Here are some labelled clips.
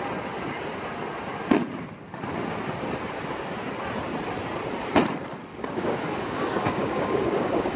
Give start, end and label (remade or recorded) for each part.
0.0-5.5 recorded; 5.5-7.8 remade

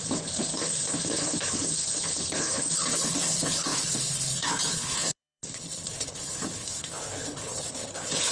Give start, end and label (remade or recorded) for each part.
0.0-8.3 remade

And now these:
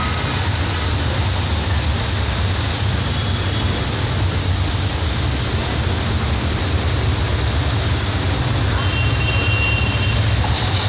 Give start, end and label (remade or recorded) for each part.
0.0-10.9 recorded